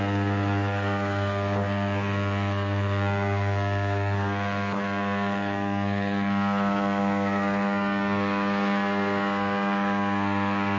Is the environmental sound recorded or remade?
remade